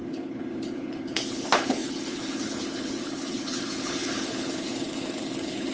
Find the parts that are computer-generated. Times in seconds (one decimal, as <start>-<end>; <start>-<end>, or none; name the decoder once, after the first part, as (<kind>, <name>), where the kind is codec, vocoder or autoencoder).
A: 0.0-5.7 (codec, HILCodec)